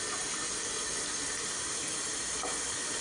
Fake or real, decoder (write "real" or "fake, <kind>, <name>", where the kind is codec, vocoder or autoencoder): real